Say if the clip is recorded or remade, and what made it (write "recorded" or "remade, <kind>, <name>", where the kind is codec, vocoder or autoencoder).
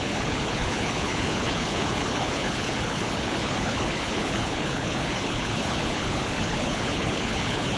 remade, codec, HILCodec